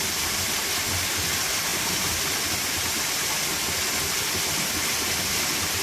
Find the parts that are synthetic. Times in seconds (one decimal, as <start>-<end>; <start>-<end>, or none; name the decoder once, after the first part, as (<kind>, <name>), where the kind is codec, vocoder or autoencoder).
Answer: none